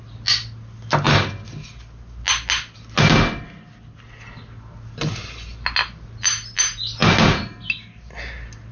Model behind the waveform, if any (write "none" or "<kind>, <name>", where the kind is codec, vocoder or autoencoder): none